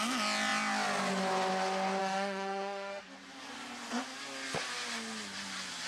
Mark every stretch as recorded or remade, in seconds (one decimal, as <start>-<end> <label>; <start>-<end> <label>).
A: 0.0-2.0 recorded; 2.0-3.0 remade; 3.0-5.9 recorded